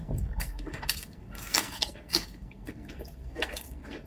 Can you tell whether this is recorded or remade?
remade